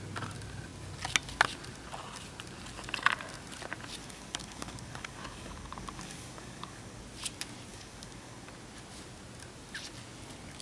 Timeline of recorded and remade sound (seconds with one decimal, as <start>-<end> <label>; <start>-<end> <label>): 0.0-4.0 recorded; 4.0-7.0 remade; 7.0-7.7 recorded; 7.7-8.5 remade; 8.5-10.6 recorded